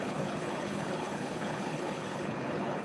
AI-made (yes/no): yes